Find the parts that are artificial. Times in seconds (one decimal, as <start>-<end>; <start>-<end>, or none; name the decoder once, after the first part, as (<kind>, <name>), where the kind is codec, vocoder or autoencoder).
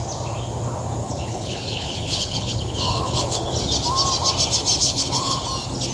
1.0-3.5 (codec, HILCodec); 4.8-5.4